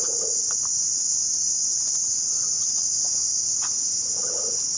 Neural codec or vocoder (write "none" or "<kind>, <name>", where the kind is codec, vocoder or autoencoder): none